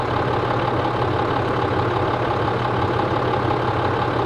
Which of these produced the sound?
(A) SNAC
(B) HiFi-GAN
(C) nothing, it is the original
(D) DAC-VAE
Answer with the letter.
C